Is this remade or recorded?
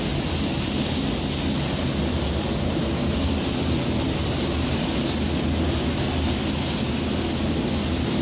recorded